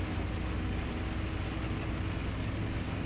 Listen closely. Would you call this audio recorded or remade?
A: recorded